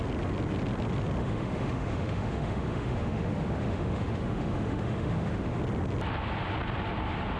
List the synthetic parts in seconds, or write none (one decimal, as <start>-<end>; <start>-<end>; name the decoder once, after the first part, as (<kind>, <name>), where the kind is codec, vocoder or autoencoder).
1.2-5.6 (autoencoder, DAC-VAE)